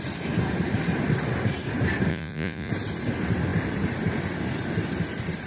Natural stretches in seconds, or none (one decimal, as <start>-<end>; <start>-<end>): 0.0-2.1; 2.7-5.5